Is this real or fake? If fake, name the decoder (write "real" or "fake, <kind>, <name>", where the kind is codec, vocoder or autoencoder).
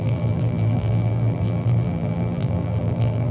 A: fake, vocoder, BigVGAN v2